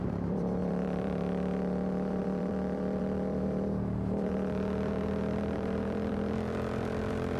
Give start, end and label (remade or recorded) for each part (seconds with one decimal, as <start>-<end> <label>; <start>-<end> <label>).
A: 0.0-7.4 remade